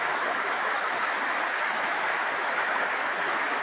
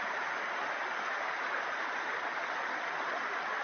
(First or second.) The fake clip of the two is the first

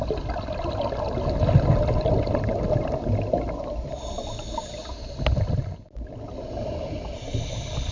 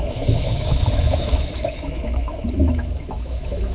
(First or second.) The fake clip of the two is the second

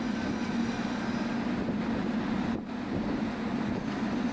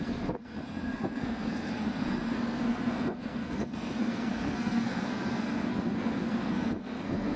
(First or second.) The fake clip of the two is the second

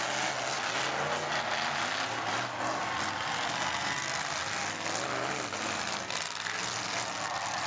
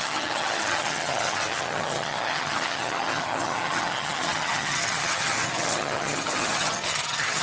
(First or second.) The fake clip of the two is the second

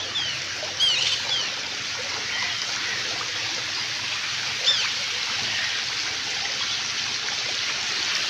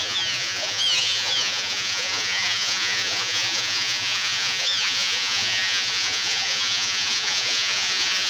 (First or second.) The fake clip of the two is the second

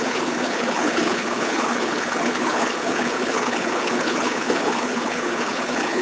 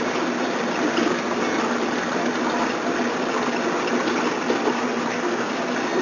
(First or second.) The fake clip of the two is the first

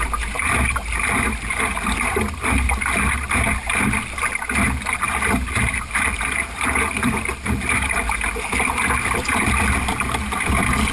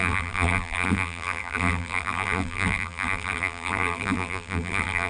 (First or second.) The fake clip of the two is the second